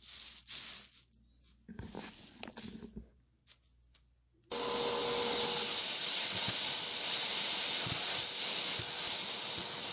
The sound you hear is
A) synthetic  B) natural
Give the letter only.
B